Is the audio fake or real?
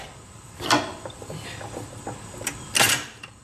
fake